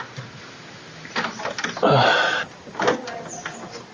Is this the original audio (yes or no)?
yes